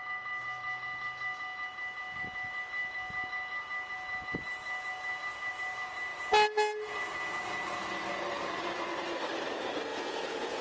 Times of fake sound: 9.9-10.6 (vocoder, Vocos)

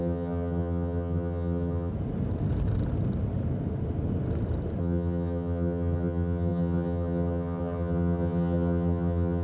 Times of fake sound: 0.0-1.9 (vocoder, HiFi-GAN); 4.8-9.4

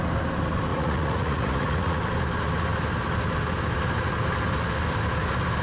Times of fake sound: 0.7-2.0 (vocoder, Vocos)